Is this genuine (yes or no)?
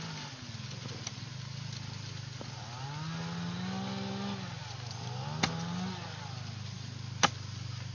yes